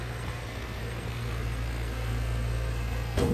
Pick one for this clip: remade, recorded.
remade